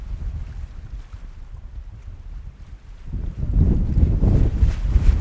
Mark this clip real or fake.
real